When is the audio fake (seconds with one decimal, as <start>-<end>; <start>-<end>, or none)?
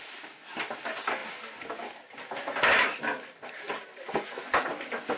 none